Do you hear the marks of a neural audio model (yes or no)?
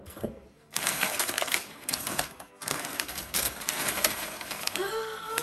yes